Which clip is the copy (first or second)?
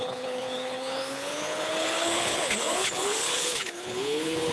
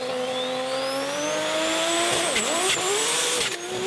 first